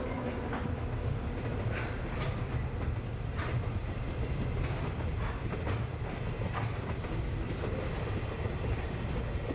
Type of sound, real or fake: real